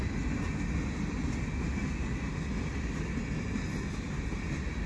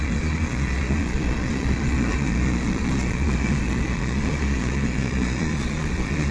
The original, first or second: first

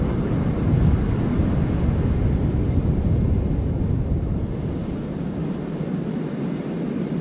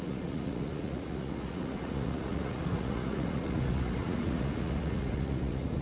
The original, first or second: first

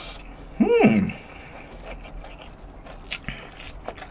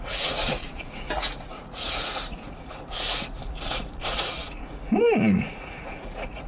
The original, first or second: first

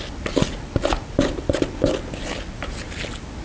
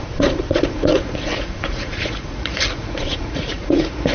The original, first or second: first